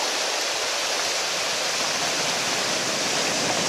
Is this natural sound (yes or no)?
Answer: yes